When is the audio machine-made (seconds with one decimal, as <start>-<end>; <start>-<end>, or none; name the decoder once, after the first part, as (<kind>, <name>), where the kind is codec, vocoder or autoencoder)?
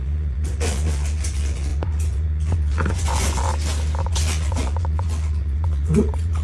0.0-3.5 (vocoder, Vocos); 4.0-6.4